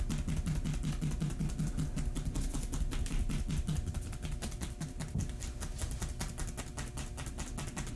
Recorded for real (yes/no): yes